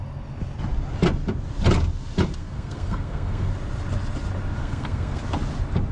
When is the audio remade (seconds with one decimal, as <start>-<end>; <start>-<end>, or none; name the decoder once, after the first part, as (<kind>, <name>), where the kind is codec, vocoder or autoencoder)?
2.4-3.5 (codec, SNAC); 4.6-5.2